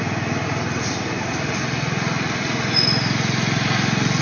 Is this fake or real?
real